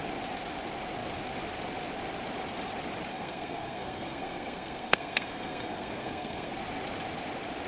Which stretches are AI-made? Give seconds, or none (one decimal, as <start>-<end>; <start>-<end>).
3.1-6.5